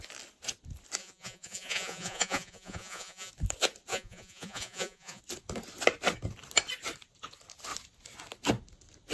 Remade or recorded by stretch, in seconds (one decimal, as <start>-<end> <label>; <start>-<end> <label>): 0.0-1.0 recorded; 1.0-3.3 remade; 3.3-3.9 recorded; 3.9-5.2 remade; 5.2-9.1 recorded

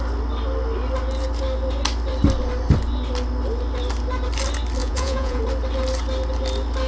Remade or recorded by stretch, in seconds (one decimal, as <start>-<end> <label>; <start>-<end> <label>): 0.0-4.8 recorded; 4.8-5.4 remade; 5.4-6.9 recorded

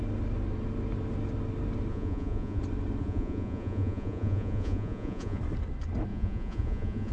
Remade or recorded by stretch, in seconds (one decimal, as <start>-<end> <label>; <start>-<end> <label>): 0.0-1.9 recorded; 1.9-2.6 remade; 2.6-3.0 recorded; 3.0-5.4 remade; 5.4-6.1 recorded; 6.1-7.1 remade

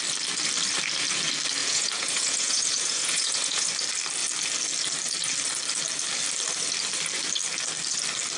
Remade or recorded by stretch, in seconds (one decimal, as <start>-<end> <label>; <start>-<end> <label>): 0.0-1.6 recorded; 1.6-3.7 remade; 3.7-8.4 recorded

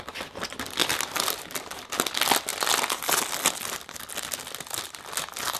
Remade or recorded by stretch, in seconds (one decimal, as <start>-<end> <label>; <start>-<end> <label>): 0.0-5.6 recorded

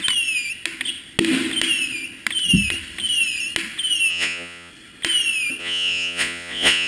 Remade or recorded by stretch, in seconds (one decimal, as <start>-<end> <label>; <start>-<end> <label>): 0.0-4.1 recorded; 4.1-4.7 remade; 4.7-5.6 recorded; 5.6-6.9 remade

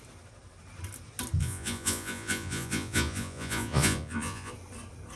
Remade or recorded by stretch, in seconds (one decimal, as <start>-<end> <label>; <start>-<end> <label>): 0.0-1.4 recorded; 1.4-4.5 remade; 4.5-5.2 recorded

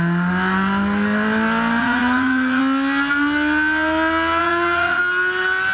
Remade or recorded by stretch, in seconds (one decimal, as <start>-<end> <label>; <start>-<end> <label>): 0.0-1.8 recorded; 1.8-2.6 remade; 2.6-4.4 recorded; 4.4-5.0 remade; 5.0-5.7 recorded